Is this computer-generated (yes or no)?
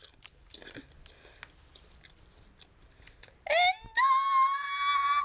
no